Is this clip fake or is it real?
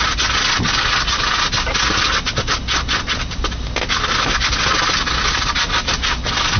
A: real